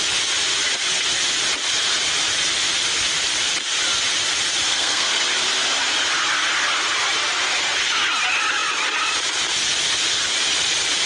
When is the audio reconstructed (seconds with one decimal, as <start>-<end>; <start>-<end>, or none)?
4.7-5.2